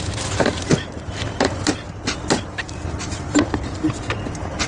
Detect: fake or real real